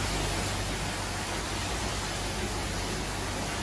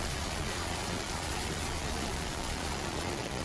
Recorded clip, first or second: first